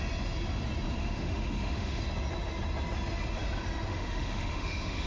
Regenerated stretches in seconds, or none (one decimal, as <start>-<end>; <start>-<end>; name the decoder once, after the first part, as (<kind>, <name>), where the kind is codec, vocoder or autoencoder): 1.0-2.0 (autoencoder, DAC-VAE); 3.9-5.1